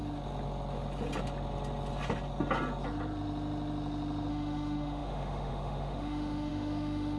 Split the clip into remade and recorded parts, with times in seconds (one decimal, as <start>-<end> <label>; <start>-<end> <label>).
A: 0.0-4.3 recorded; 4.3-7.2 remade

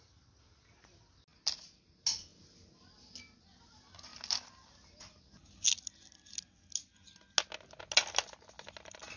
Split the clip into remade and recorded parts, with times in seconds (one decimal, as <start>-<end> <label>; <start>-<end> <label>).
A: 0.0-9.2 recorded

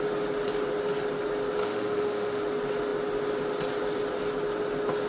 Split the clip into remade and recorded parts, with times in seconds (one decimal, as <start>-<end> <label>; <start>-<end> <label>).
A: 0.0-1.6 recorded; 1.6-2.4 remade; 2.4-5.1 recorded

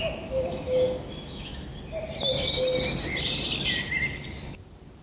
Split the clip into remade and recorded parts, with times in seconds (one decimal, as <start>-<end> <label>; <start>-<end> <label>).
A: 0.0-1.7 remade; 1.7-5.0 recorded

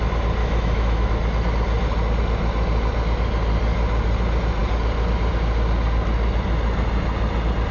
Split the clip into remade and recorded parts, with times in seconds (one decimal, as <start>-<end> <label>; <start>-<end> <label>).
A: 0.0-0.4 recorded; 0.4-1.0 remade; 1.0-7.7 recorded

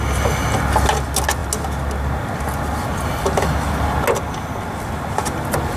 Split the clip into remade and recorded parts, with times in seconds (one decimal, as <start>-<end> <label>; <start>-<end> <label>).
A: 0.0-5.8 recorded

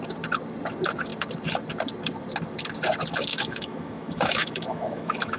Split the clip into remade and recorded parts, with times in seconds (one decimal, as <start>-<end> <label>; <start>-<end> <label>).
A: 0.0-3.3 recorded; 3.3-5.4 remade

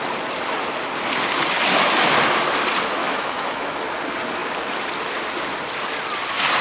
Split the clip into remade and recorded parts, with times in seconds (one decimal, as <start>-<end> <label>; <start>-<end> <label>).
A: 0.0-3.0 recorded; 3.0-3.8 remade; 3.8-6.6 recorded